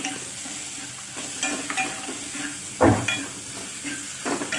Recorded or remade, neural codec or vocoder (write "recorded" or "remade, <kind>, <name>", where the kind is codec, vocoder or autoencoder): recorded